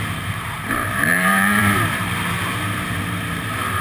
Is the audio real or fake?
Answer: fake